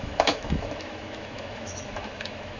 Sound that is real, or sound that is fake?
fake